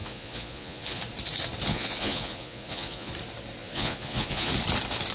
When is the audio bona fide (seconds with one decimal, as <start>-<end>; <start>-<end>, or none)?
1.0-1.7; 3.1-3.6; 4.5-5.1